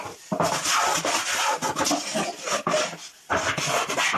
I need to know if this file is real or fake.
real